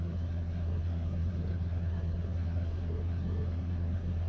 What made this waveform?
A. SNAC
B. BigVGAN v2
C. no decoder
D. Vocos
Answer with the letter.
A